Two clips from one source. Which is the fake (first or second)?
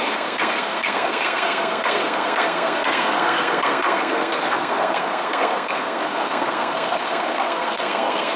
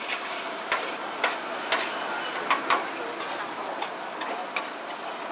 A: first